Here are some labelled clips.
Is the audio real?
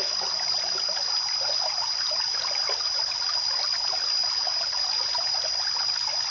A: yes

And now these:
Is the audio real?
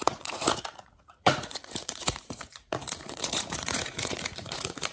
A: no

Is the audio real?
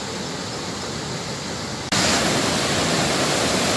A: yes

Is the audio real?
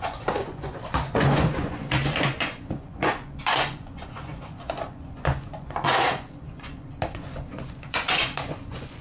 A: no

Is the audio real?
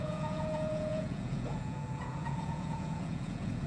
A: no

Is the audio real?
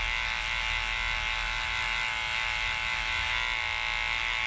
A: yes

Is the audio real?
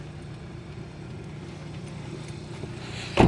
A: yes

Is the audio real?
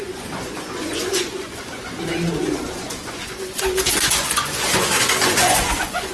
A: no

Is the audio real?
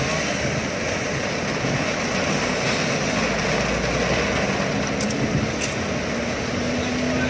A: yes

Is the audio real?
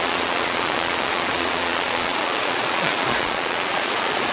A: no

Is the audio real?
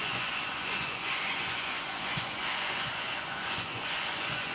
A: no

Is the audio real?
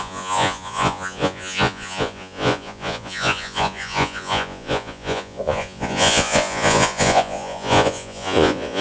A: no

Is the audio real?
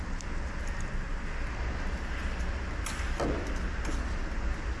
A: yes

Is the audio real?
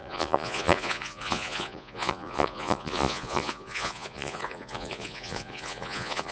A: no